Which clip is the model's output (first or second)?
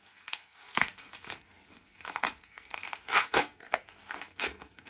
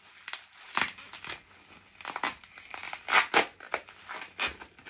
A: first